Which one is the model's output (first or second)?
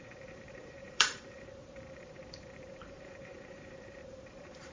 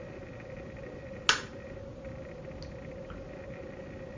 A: first